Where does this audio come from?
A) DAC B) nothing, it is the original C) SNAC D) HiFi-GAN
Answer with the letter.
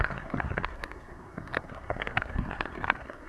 C